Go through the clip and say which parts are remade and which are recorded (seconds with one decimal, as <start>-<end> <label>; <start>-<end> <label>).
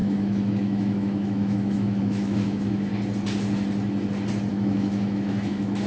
0.0-2.9 remade; 2.9-4.5 recorded; 4.5-5.9 remade